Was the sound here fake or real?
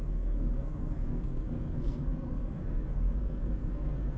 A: fake